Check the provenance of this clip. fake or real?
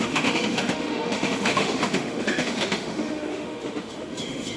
fake